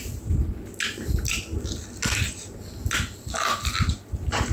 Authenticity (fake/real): real